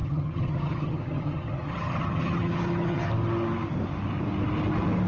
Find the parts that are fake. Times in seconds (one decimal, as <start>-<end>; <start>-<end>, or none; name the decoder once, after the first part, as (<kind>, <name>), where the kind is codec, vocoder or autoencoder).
0.0-3.1 (vocoder, HiFi-GAN)